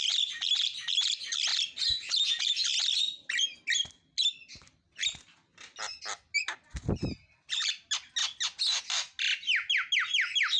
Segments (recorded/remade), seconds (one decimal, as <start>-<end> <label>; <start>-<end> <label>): 0.0-10.6 recorded